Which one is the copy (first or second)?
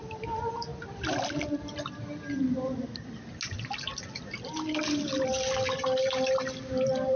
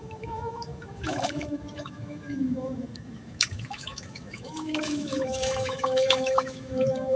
second